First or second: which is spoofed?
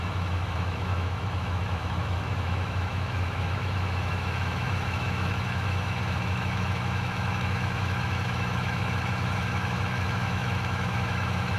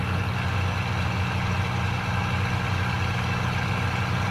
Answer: first